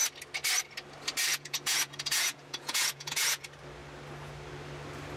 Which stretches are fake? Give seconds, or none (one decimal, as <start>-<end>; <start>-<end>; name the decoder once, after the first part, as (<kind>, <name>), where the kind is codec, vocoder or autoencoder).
1.3-3.4 (vocoder, Vocos)